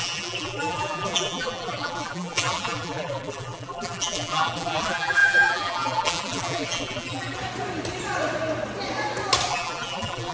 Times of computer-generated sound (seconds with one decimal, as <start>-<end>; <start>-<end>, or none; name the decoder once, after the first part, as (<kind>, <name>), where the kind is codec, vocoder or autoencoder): 0.0-7.4 (vocoder, BigVGAN v2); 9.5-10.3